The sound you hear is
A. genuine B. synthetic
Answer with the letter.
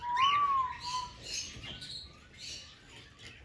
A